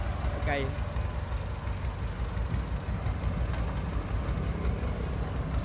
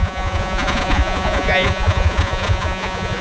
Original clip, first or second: first